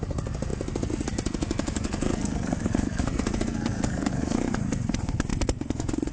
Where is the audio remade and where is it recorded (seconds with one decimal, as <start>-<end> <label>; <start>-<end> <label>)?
0.0-6.1 remade